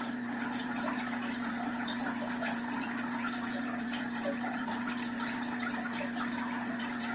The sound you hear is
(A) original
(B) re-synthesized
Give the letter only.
B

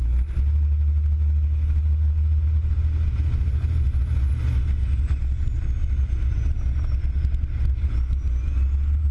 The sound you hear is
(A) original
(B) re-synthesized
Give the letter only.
A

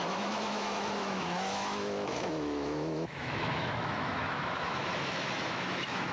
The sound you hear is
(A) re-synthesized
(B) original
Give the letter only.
A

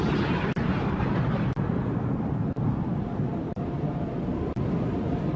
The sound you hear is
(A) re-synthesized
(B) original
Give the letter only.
B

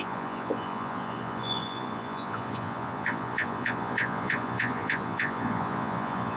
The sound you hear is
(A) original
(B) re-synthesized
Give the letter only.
B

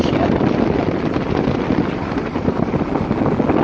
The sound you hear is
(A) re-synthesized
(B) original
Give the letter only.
B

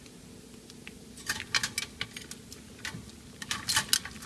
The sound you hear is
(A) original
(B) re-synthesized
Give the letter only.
A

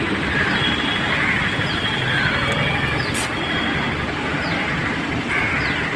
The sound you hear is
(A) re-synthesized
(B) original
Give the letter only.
B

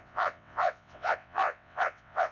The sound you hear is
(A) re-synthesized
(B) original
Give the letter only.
A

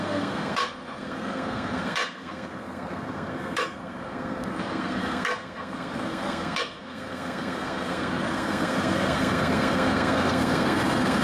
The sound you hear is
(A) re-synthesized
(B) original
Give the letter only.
A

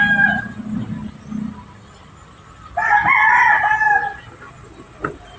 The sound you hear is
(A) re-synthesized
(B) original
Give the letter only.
B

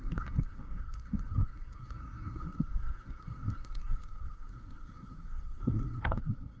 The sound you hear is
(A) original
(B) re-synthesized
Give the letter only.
B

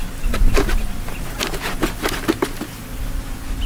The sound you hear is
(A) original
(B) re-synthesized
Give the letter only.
A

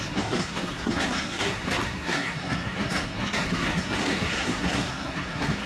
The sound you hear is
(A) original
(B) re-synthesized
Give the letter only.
B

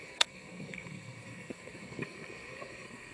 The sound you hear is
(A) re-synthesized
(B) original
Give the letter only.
A